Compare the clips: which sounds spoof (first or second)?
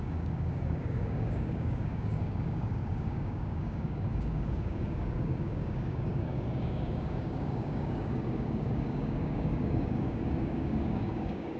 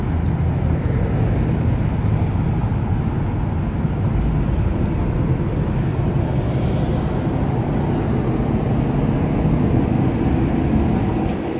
first